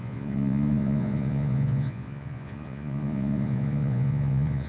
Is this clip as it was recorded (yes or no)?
no